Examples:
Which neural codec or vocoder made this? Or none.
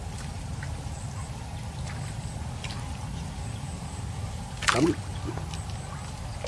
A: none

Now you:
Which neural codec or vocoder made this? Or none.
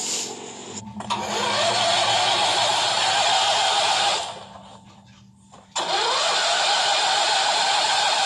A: none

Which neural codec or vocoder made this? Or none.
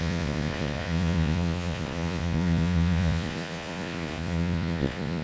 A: vocoder, Vocos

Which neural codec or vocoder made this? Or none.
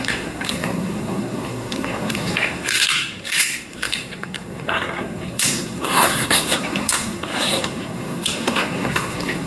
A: codec, SNAC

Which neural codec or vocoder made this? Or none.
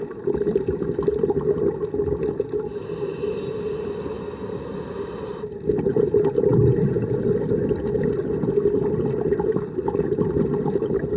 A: none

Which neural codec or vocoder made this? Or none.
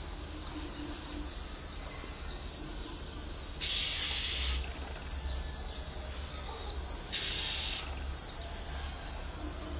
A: none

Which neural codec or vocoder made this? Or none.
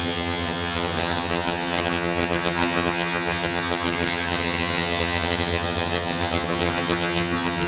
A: vocoder, HiFi-GAN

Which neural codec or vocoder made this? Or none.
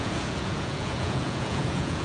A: vocoder, Vocos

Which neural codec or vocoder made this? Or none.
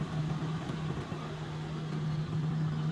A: none